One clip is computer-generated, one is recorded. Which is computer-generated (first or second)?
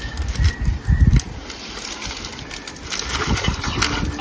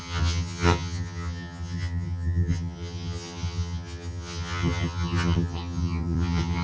second